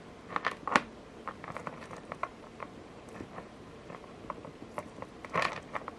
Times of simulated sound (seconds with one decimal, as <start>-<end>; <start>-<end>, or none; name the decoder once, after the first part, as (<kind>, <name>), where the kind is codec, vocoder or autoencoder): 1.6-5.1 (vocoder, BigVGAN v2)

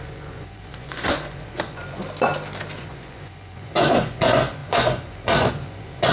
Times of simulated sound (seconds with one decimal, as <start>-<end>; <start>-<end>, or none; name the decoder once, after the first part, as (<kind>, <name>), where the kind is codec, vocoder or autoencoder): 0.0-2.0 (vocoder, Vocos); 2.8-6.1

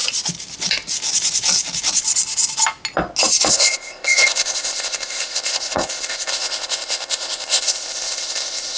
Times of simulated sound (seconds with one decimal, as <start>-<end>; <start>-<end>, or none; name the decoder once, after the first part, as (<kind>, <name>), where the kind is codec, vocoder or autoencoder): 3.5-8.8 (codec, ZipCodec)